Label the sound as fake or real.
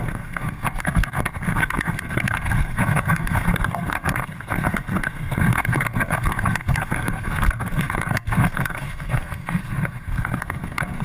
fake